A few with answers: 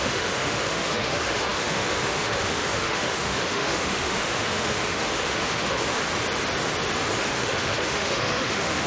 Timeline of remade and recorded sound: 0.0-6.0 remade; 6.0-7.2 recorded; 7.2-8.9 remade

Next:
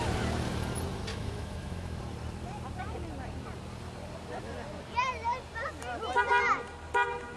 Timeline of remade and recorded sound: 0.0-1.1 recorded; 1.1-2.0 remade; 2.0-7.4 recorded

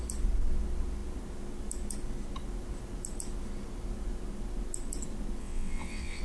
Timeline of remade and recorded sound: 0.0-5.4 recorded; 5.4-6.2 remade

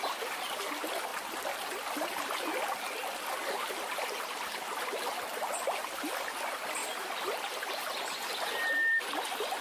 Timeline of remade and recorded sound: 0.0-9.6 recorded

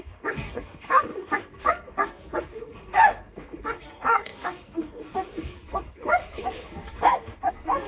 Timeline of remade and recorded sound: 0.0-7.9 remade